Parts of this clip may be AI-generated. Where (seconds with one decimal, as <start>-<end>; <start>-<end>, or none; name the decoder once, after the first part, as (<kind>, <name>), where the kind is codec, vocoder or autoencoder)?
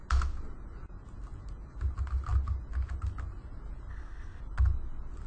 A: 3.9-4.4 (codec, HILCodec)